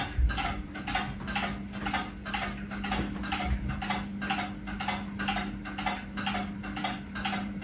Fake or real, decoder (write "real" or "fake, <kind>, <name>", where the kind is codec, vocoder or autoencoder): real